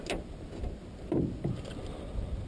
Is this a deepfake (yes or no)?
no